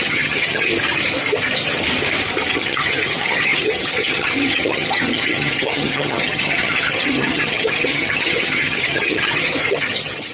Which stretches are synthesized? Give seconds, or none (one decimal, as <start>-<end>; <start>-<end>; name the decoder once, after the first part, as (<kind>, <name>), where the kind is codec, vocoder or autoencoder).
0.0-0.7 (vocoder, HiFi-GAN); 2.5-10.3